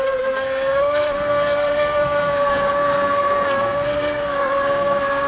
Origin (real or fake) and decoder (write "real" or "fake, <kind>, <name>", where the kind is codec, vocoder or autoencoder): fake, codec, SNAC